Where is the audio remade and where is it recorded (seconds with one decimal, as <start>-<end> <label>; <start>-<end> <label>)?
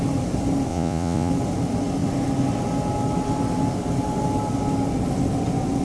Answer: 0.0-0.7 recorded; 0.7-1.3 remade; 1.3-5.8 recorded